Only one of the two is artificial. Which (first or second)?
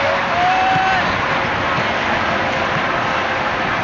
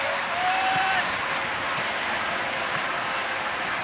second